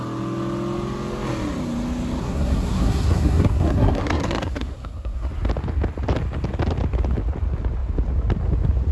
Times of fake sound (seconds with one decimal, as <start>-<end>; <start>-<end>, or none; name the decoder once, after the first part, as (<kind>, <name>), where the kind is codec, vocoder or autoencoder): 2.2-5.3 (codec, SNAC)